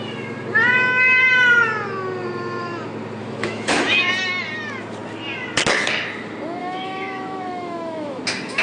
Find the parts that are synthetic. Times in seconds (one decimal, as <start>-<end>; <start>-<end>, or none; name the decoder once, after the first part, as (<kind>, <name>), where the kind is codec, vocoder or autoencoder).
3.2-4.1 (autoencoder, DAC-VAE); 6.6-8.2